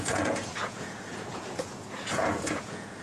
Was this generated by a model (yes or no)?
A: yes